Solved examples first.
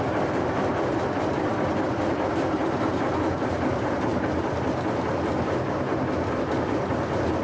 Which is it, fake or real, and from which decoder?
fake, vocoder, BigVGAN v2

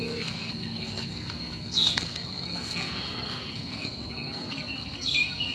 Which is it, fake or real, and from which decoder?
fake, codec, SNAC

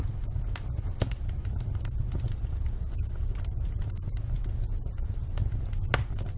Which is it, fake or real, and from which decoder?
real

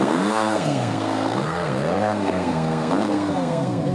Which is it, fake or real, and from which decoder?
fake, codec, SNAC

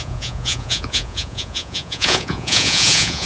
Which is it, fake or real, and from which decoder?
fake, vocoder, Vocos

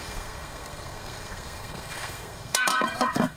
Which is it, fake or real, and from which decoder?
fake, codec, SNAC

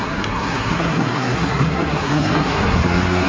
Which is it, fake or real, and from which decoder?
fake, codec, SNAC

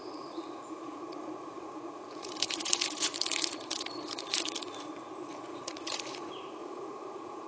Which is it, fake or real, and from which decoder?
fake, vocoder, Vocos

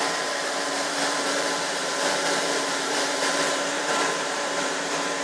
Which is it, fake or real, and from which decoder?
fake, vocoder, BigVGAN v2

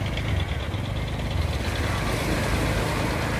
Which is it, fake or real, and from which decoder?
real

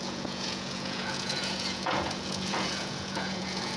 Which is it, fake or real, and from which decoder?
fake, vocoder, Vocos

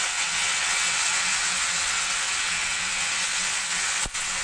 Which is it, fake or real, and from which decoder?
fake, vocoder, WaveNeXt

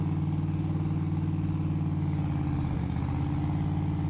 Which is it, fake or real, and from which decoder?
real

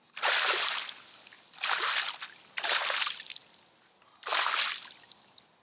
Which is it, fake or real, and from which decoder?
real